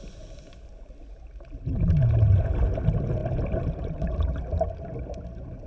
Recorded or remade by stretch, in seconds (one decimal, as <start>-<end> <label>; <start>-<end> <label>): 0.0-5.7 recorded

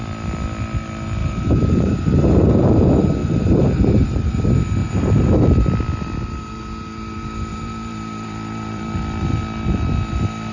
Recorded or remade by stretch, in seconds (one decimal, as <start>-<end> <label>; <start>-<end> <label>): 0.0-1.2 recorded; 1.2-2.7 remade; 2.7-3.2 recorded; 3.2-4.3 remade; 4.3-4.8 recorded; 4.8-5.5 remade; 5.5-7.5 recorded; 7.5-8.8 remade; 8.8-10.5 recorded

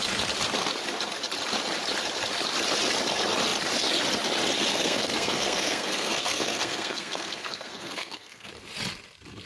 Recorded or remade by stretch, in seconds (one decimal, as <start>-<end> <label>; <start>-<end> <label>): 0.0-4.7 recorded; 4.7-8.5 remade; 8.5-9.5 recorded

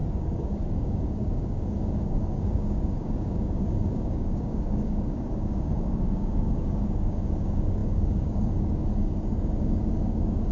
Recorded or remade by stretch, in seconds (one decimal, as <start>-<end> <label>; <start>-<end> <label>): 0.0-10.5 remade

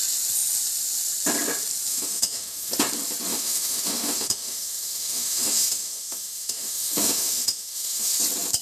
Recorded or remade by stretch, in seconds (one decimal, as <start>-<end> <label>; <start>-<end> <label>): 0.0-1.9 recorded; 1.9-2.7 remade; 2.7-3.3 recorded; 3.3-8.2 remade; 8.2-8.6 recorded

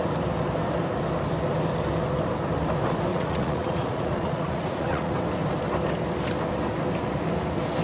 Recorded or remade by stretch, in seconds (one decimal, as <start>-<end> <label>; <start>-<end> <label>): 0.0-3.1 recorded; 3.1-5.1 remade; 5.1-7.8 recorded